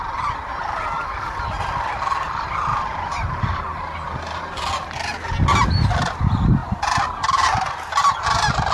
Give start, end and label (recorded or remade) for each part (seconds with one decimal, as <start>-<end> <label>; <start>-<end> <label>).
0.0-2.7 recorded; 2.7-4.7 remade; 4.7-8.7 recorded